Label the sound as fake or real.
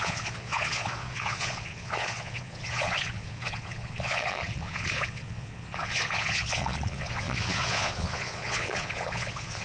fake